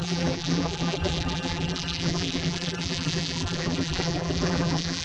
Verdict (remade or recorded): remade